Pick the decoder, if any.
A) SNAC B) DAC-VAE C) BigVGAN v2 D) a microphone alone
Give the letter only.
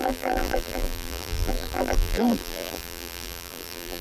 C